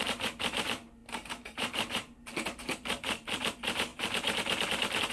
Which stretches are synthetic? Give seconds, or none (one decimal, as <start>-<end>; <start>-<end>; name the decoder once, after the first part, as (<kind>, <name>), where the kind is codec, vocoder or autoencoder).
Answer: 0.0-5.1 (vocoder, BigVGAN v2)